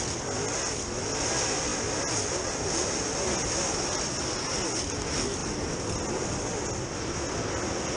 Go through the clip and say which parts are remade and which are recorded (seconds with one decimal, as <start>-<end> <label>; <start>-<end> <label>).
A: 0.0-8.0 recorded